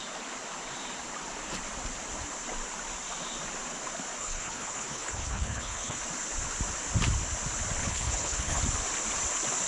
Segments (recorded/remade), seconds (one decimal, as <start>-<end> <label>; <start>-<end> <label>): 0.0-4.2 recorded; 4.2-6.0 remade; 6.0-7.8 recorded; 7.8-8.6 remade; 8.6-9.7 recorded